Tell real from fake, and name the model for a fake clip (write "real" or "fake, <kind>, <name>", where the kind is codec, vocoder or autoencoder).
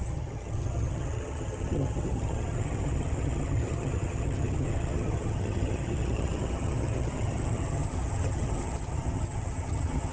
fake, vocoder, HiFi-GAN